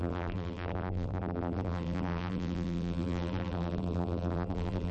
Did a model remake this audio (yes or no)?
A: yes